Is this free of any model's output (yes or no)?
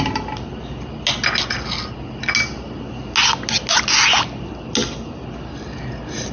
yes